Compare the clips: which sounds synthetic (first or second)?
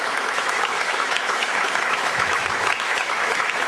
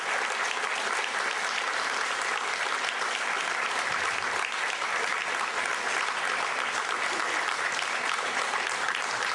first